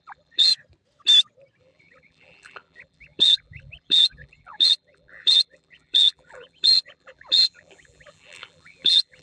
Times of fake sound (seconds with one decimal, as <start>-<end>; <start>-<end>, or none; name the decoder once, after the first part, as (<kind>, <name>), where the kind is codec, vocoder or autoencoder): 0.0-0.5 (vocoder, BigVGAN v2); 1.6-9.2